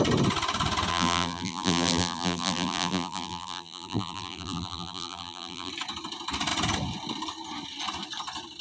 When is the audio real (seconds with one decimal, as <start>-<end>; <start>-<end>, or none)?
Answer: 0.0-0.9; 5.7-8.6